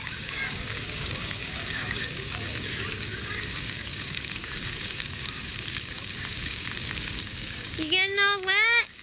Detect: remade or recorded remade